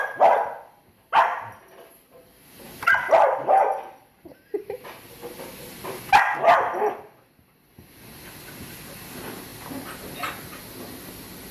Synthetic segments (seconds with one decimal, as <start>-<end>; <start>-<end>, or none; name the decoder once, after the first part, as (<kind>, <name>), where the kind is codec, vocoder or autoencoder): none